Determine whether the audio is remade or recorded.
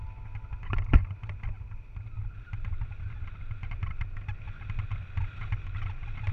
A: recorded